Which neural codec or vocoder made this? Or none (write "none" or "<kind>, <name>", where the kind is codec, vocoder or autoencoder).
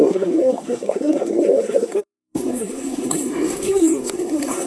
codec, SNAC